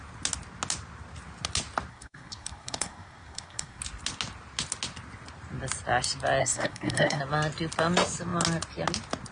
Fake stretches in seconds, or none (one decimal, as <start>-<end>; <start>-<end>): 1.9-3.8; 6.4-7.2